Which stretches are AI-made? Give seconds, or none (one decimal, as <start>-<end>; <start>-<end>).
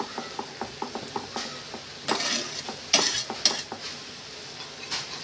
none